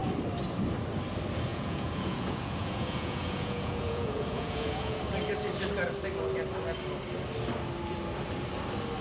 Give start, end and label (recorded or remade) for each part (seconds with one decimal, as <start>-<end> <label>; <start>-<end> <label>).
0.0-1.5 recorded; 1.5-5.0 remade; 5.0-9.0 recorded